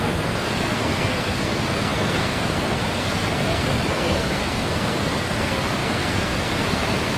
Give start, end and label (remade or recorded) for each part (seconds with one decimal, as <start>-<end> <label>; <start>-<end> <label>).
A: 0.0-7.2 remade